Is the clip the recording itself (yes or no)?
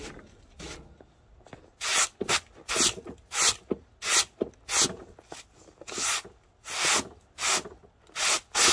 yes